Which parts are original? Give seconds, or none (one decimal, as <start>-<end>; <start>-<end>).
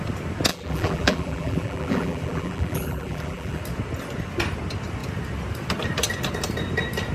0.0-0.5; 3.6-7.1